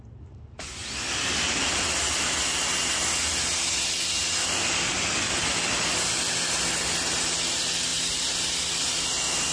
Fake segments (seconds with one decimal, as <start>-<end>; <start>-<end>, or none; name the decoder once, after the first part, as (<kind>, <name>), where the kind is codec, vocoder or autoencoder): none